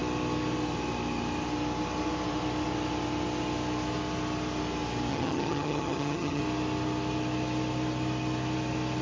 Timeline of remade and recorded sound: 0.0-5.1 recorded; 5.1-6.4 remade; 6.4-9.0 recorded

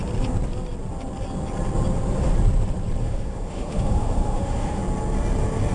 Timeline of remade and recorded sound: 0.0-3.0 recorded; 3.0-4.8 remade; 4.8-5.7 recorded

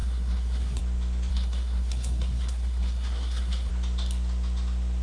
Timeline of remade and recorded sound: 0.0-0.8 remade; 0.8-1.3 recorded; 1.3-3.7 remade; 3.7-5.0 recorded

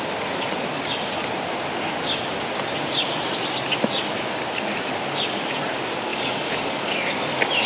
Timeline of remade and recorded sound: 0.0-6.1 recorded; 6.1-7.1 remade; 7.1-7.7 recorded

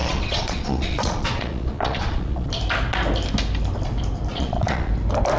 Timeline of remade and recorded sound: 0.0-2.5 remade; 2.5-4.3 recorded; 4.3-4.9 remade; 4.9-5.4 recorded